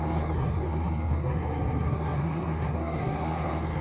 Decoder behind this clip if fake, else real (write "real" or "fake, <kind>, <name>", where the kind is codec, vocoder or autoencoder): fake, codec, SNAC